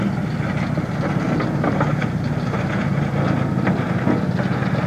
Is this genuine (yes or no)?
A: yes